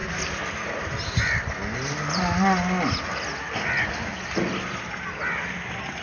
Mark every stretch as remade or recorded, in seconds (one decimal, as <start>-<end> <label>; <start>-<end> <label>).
0.0-6.0 recorded